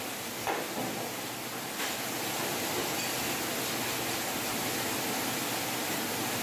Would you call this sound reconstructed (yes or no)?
no